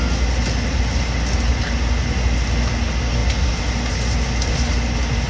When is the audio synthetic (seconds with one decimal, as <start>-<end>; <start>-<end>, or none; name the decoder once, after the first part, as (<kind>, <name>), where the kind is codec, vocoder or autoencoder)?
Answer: none